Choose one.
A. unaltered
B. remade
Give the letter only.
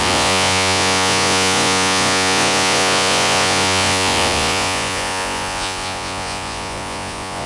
B